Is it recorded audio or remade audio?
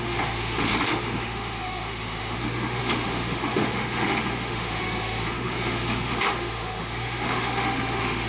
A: remade